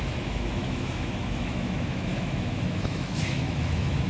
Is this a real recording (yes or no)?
no